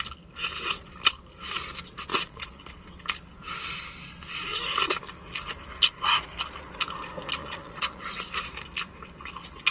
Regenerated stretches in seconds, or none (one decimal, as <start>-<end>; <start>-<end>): 2.1-2.6; 7.4-8.0